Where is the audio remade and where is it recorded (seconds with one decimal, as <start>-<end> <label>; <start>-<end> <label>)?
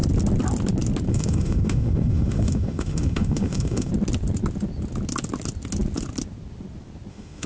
0.0-1.1 recorded; 1.1-3.9 remade; 3.9-7.1 recorded; 7.1-7.5 remade